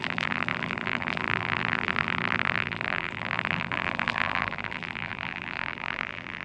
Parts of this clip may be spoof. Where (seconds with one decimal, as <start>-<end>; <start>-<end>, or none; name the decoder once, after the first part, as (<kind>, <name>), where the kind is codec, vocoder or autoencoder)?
0.0-6.4 (vocoder, BigVGAN v2)